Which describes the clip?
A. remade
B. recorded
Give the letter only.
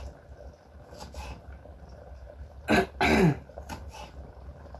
B